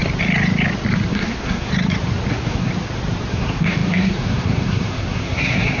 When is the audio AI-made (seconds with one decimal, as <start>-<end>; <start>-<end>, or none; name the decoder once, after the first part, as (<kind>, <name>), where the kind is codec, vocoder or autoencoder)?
1.1-1.7 (codec, SNAC); 2.3-2.7; 3.3-5.8